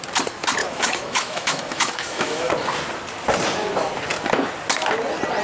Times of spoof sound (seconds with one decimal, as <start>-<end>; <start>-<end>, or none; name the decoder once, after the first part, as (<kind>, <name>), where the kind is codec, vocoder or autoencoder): 0.6-2.5 (autoencoder, DAC-VAE)